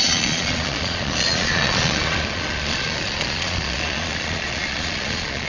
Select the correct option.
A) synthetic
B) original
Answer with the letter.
A